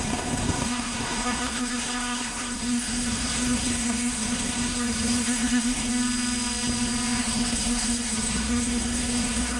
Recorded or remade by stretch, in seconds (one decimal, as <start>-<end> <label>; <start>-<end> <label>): 0.0-5.9 remade; 5.9-7.2 recorded; 7.2-9.6 remade